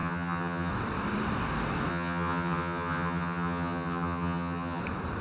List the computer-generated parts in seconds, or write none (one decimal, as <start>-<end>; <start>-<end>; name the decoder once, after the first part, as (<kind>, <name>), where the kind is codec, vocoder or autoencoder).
0.0-0.7 (vocoder, HiFi-GAN); 1.9-4.8